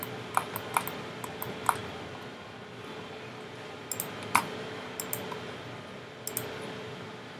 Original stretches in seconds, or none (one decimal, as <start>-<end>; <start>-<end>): 0.0-7.4